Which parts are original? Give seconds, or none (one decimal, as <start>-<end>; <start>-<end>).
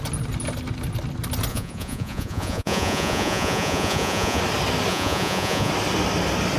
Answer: 0.0-1.5; 4.4-4.9; 5.7-6.6